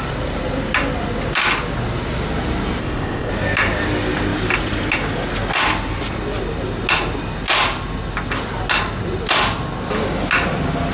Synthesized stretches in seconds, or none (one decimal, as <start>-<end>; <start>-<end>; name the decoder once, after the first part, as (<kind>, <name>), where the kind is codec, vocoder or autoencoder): 2.8-3.3 (codec, ZipCodec)

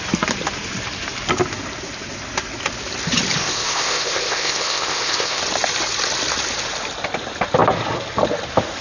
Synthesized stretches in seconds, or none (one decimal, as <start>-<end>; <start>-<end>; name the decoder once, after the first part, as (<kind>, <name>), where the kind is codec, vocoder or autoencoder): 3.4-5.4 (codec, ZipCodec)

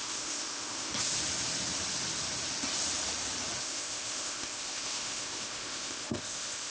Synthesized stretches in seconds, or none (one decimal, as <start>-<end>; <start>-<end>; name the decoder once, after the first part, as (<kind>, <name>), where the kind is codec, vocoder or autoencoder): 0.0-0.9 (codec, ZipCodec); 3.6-6.7

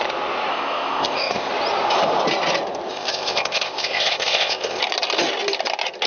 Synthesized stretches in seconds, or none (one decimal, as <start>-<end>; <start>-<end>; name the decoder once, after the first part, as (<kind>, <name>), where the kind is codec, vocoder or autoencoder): 0.5-1.5 (codec, ZipCodec); 2.9-4.8

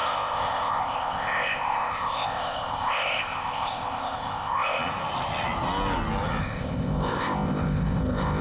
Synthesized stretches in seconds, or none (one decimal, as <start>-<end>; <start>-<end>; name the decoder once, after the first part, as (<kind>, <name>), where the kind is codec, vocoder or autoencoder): 0.0-4.8 (codec, ZipCodec); 6.4-8.4

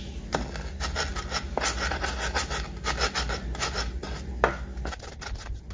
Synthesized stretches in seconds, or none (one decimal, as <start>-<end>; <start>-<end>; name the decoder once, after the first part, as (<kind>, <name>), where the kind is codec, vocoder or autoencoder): none

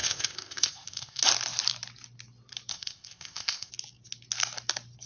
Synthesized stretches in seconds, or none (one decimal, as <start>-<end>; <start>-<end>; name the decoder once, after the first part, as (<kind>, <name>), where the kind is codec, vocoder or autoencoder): 0.0-1.2 (codec, ZipCodec); 2.7-3.7

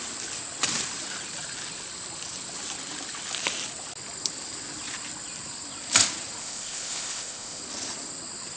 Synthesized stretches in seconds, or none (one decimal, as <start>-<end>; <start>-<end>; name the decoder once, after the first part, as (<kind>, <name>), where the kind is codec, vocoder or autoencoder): 6.4-7.6 (codec, ZipCodec)